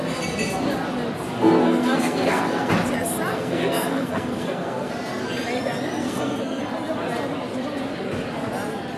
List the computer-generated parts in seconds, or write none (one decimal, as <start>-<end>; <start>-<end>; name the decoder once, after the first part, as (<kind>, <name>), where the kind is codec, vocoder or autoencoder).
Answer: 1.6-2.7 (codec, SNAC); 3.3-4.9; 6.0-6.6